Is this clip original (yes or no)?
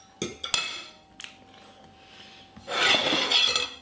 yes